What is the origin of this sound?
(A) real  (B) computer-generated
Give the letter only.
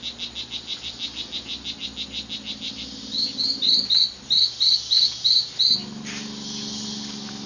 A